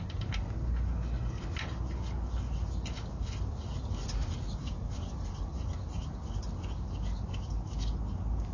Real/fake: real